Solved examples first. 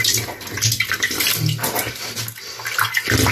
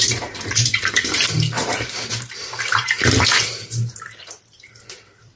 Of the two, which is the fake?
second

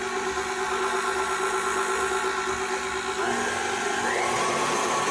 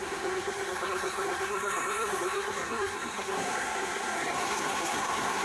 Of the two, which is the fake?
second